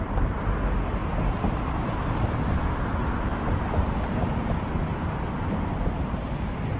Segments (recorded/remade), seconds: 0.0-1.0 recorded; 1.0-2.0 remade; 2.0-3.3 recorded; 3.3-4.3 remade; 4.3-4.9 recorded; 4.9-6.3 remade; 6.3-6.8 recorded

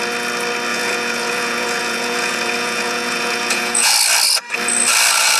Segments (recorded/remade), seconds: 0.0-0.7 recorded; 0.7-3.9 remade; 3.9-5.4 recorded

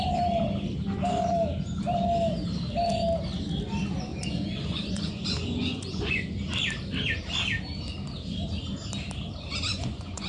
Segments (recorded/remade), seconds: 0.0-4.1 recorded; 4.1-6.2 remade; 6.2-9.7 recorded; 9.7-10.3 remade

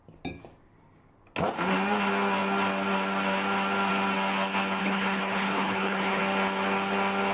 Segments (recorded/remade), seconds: 0.0-4.8 recorded; 4.8-6.2 remade; 6.2-7.3 recorded

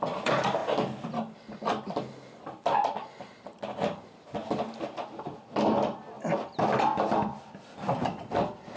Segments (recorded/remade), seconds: 0.0-8.8 recorded

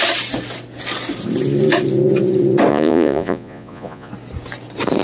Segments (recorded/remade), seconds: 0.0-2.7 recorded; 2.7-4.1 remade; 4.1-5.0 recorded